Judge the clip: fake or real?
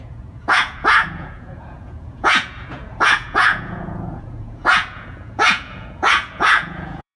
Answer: fake